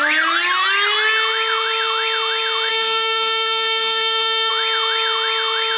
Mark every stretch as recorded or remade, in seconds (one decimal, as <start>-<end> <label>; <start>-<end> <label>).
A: 0.0-2.7 recorded; 2.7-4.5 remade; 4.5-5.8 recorded